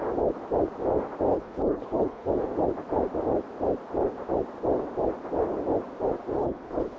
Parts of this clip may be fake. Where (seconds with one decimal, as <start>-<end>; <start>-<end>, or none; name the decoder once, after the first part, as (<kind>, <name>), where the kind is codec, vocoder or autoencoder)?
1.3-2.3 (codec, HILCodec); 6.4-7.0